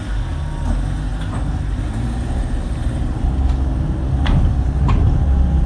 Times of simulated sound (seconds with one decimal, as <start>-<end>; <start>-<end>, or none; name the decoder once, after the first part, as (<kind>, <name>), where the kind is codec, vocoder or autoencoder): none